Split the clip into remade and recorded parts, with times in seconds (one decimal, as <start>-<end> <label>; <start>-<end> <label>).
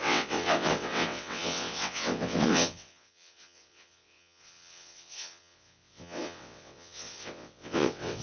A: 0.0-8.2 remade